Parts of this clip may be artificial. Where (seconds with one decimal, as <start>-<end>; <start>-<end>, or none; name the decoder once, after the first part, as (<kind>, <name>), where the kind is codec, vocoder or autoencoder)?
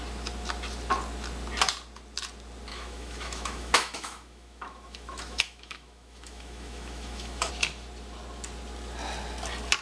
2.7-7.5 (autoencoder, DAC-VAE)